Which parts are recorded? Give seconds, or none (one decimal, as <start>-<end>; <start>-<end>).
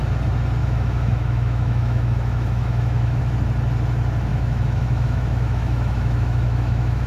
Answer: 0.0-0.6; 3.2-4.3